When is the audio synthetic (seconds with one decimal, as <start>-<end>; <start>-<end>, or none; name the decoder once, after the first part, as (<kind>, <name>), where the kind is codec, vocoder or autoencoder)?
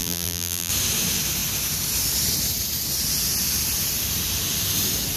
0.0-0.7 (vocoder, BigVGAN v2)